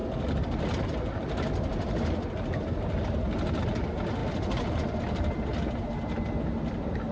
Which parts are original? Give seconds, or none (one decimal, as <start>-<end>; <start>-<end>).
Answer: 0.0-7.1